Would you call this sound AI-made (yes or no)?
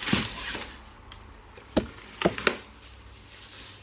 no